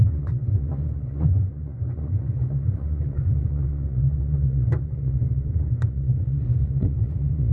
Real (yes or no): no